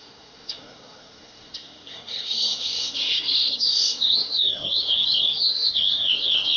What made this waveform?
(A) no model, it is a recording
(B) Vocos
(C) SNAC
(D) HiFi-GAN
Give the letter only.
C